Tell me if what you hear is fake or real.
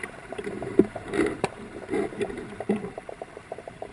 fake